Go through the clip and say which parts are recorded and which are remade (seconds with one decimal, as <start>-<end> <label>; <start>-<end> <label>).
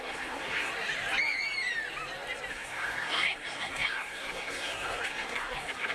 0.0-0.7 remade; 0.7-2.5 recorded; 2.5-5.9 remade